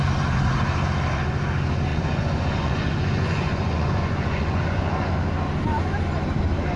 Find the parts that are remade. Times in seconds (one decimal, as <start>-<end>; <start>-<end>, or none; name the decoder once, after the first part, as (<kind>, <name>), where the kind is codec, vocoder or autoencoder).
1.9-5.1 (vocoder, Vocos)